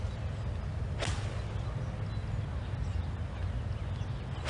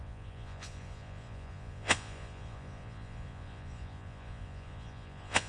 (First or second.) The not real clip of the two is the second